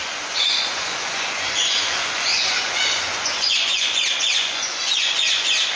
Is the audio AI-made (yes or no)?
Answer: yes